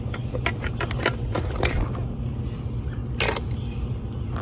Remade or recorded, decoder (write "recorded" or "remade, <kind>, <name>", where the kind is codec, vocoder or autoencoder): recorded